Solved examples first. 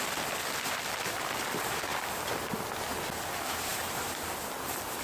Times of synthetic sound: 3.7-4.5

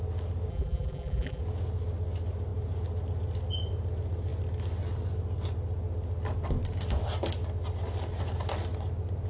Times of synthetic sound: 0.5-1.4

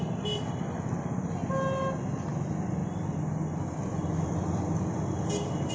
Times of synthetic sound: none

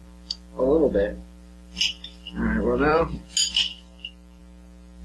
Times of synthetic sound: 0.0-3.0; 3.4-4.4

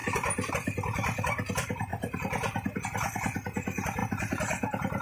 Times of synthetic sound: 0.0-0.5; 1.9-2.8; 4.0-5.0